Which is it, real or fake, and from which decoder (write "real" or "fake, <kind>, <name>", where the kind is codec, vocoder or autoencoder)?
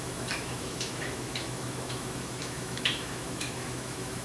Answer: fake, autoencoder, DAC-VAE